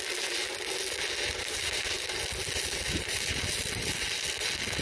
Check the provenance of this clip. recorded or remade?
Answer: recorded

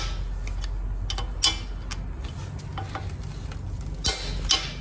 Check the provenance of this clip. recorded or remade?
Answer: recorded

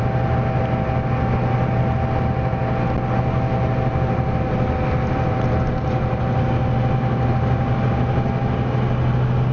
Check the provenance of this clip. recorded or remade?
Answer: recorded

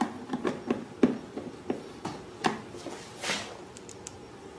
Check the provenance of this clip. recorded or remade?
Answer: recorded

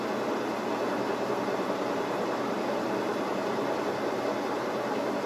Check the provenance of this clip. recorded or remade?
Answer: recorded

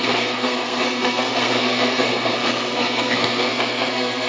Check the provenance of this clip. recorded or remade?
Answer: remade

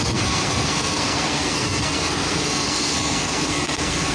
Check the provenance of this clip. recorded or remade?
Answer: remade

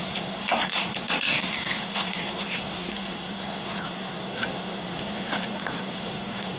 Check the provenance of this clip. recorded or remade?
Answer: remade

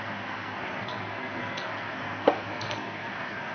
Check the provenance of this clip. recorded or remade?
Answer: remade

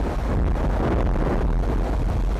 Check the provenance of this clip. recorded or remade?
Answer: recorded